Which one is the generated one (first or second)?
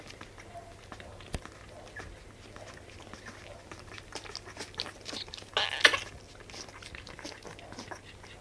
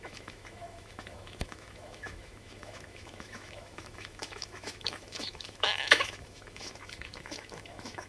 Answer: second